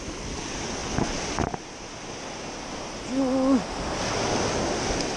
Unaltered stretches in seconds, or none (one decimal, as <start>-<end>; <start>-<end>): 0.0-5.2